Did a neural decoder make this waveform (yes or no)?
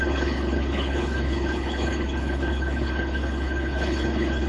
yes